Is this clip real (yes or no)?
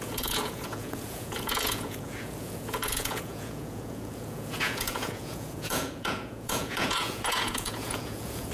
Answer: no